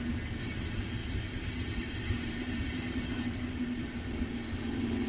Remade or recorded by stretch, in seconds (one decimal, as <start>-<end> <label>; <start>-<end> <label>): 0.0-1.0 recorded; 1.0-4.1 remade; 4.1-5.1 recorded